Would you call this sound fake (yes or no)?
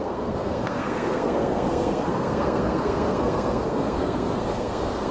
yes